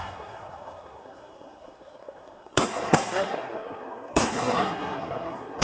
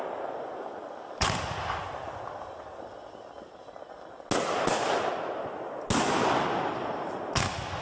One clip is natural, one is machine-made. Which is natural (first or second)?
second